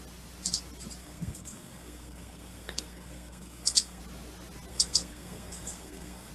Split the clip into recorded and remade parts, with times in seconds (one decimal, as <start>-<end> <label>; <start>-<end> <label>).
0.0-1.0 recorded; 1.0-4.0 remade; 4.0-4.7 recorded; 4.7-6.3 remade